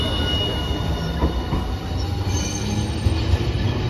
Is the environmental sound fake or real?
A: real